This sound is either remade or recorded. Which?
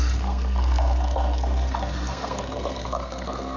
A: remade